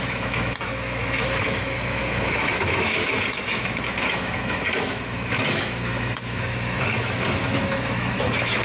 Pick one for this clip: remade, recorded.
remade